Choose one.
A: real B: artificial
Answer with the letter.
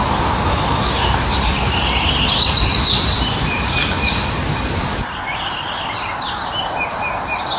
A